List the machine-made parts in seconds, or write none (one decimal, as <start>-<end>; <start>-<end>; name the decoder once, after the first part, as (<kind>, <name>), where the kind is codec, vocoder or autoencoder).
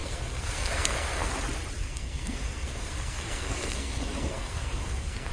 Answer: 0.0-1.3 (codec, SNAC); 1.8-5.3